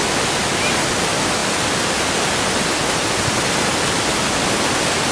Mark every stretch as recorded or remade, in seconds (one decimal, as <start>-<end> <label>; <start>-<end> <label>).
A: 0.0-5.1 recorded